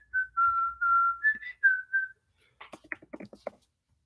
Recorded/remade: recorded